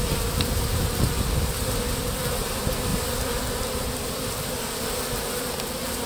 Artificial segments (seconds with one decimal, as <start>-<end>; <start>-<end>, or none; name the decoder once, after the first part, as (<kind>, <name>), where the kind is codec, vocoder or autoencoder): none